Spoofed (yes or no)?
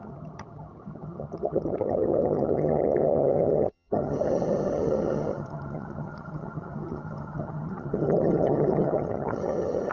yes